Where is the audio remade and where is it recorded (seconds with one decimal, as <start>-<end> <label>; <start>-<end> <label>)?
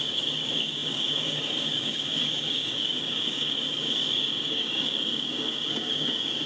0.0-6.5 remade